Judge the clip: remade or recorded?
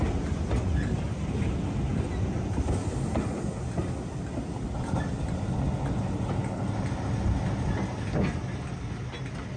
recorded